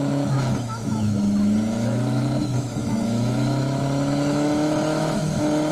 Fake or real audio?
fake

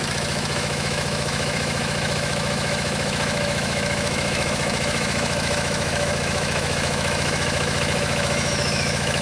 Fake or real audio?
fake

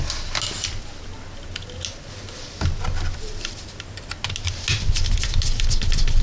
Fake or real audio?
real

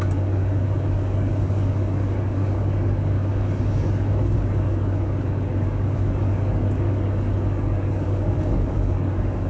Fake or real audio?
fake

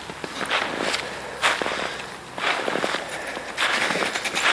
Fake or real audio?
real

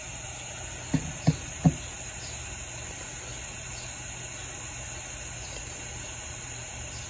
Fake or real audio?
real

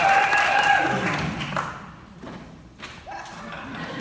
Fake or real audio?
real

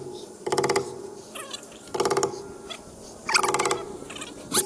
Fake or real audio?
real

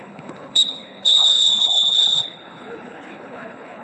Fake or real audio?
fake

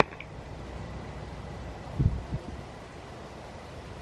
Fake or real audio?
real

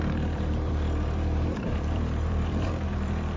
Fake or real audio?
fake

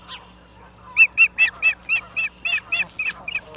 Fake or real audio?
real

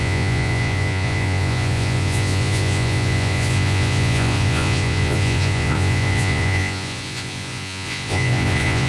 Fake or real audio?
fake